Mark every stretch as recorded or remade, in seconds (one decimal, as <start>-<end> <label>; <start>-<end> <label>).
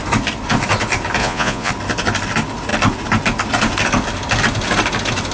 0.0-1.2 recorded; 1.2-1.7 remade; 1.7-5.3 recorded